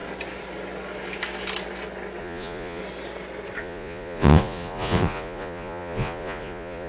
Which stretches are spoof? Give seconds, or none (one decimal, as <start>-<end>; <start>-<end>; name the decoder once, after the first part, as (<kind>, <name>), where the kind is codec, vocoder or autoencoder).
2.2-2.8 (vocoder, Vocos); 3.6-6.9